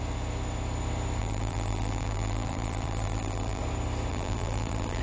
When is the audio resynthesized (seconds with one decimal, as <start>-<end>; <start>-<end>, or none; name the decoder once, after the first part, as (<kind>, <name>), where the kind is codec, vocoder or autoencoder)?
1.2-3.6 (vocoder, BigVGAN v2); 4.1-5.0